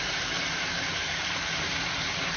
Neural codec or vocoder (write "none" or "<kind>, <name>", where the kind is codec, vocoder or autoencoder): vocoder, BigVGAN v2